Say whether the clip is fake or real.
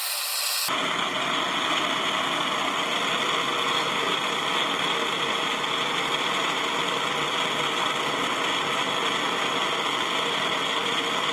real